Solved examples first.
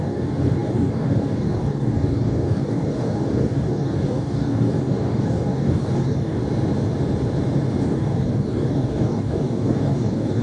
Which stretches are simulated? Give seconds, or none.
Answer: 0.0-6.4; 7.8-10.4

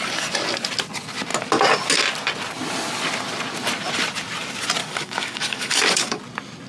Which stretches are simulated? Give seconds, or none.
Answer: 4.8-6.2

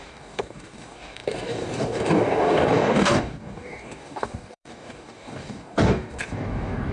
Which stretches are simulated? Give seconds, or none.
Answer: 0.0-6.9

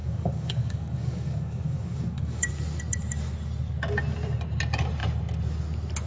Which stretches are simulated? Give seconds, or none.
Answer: 0.0-2.5

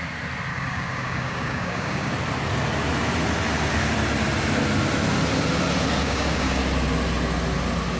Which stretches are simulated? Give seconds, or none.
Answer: 0.5-2.1; 6.0-6.6